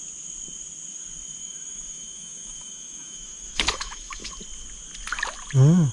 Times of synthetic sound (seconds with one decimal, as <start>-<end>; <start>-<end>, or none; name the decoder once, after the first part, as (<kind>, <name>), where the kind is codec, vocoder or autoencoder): 1.4-4.3 (autoencoder, DAC-VAE)